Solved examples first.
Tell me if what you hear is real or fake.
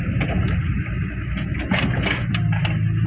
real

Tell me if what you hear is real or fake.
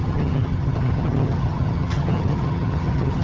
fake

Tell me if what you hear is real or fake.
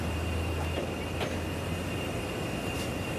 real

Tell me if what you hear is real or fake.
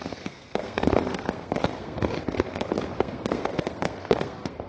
fake